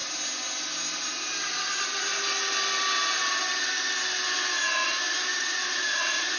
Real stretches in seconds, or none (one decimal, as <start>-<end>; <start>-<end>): 0.0-5.3